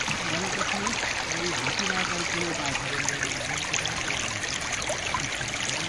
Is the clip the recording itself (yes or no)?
yes